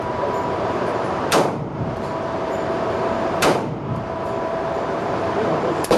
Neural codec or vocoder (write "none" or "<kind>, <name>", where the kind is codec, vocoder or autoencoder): vocoder, BigVGAN v2